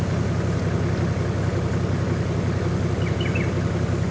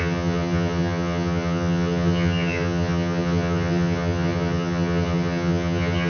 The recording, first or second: first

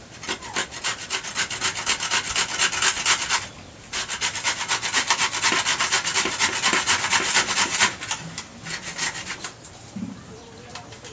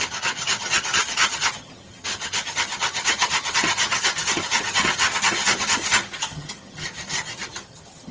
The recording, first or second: first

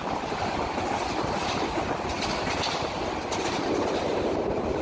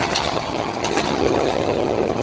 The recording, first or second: first